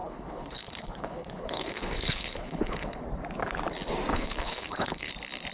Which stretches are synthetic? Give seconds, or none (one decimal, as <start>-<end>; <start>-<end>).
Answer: 0.0-3.0; 4.1-5.1